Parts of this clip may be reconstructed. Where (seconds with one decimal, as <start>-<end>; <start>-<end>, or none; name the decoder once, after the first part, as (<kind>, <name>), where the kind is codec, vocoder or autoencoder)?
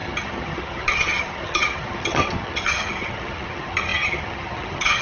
0.0-5.0 (vocoder, HiFi-GAN)